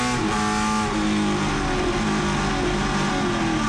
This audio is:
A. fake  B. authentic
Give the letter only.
B